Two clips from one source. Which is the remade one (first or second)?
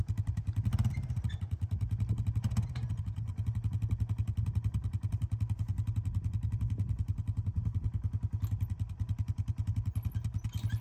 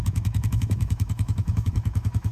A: second